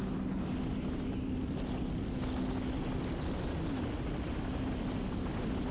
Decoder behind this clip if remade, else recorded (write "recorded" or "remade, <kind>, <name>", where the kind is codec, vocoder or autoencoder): recorded